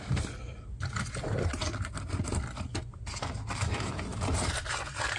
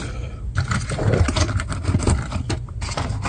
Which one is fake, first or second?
second